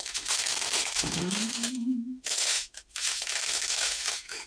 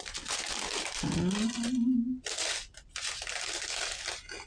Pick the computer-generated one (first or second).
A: first